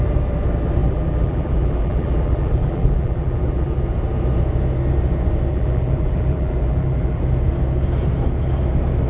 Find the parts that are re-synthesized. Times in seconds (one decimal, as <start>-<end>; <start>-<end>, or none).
0.8-3.8; 5.5-7.2